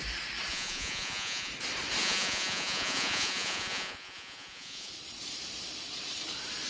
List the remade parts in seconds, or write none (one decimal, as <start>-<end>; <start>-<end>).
0.5-1.5; 2.0-4.9

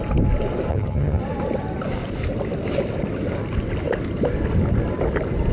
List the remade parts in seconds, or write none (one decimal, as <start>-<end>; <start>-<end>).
0.7-1.2

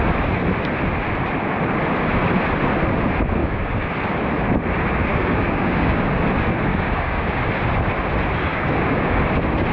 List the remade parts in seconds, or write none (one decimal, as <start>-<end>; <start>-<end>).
3.4-3.9; 5.1-6.0; 6.7-7.4; 8.5-9.2

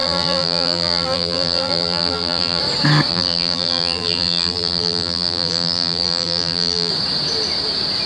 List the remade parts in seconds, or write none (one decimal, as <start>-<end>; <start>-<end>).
0.0-2.6; 3.1-6.9

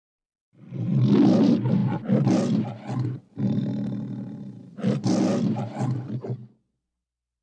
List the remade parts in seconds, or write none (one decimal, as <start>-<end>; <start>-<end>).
none

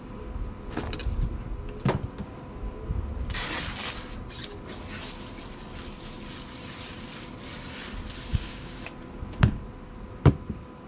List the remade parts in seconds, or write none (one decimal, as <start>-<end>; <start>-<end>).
8.3-8.8